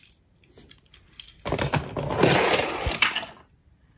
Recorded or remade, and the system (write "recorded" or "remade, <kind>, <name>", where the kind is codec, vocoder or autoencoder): recorded